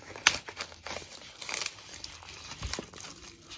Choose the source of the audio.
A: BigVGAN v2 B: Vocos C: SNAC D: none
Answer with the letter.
D